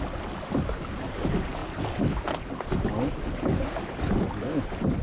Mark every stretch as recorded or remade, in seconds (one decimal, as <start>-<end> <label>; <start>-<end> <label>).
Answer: 0.0-5.0 recorded